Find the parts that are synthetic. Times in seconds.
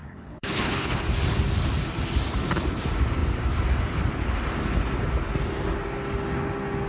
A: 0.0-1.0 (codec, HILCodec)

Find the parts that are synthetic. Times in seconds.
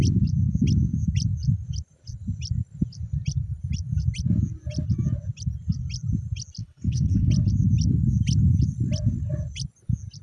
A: 6.6-7.3 (codec, HILCodec)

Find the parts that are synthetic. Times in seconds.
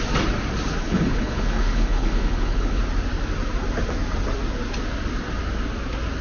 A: 0.8-2.8 (codec, HILCodec)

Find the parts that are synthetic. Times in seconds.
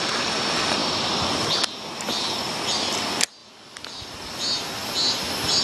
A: none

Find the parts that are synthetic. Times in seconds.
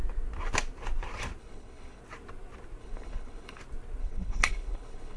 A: 1.4-2.0 (codec, HILCodec); 2.8-3.6; 4.0-5.2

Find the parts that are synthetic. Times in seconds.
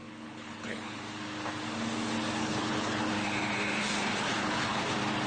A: 0.0-1.0 (codec, HILCodec); 2.4-3.1; 4.1-4.8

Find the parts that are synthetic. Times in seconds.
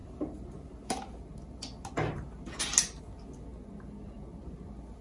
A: none